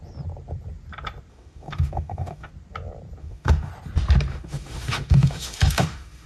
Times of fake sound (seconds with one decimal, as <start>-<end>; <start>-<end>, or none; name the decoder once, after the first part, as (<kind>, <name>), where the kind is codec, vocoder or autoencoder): 1.3-2.5 (autoencoder, DAC-VAE); 3.2-3.7; 4.3-6.3